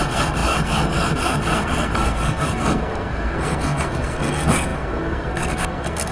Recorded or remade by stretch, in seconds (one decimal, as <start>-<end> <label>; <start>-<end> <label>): 0.0-6.1 remade